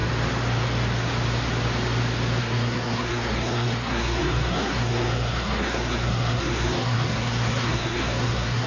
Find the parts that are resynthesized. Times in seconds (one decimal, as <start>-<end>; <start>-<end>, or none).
2.4-8.7